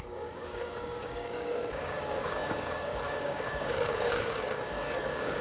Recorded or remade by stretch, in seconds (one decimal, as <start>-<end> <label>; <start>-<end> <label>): 0.0-5.4 remade